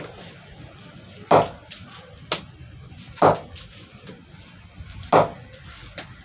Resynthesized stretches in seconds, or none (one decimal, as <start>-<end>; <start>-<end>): none